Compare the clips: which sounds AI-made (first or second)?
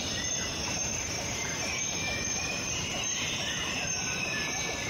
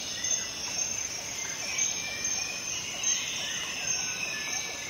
first